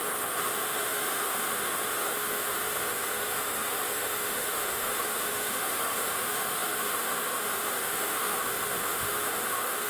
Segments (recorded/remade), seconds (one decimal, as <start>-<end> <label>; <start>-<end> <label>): 0.0-9.9 remade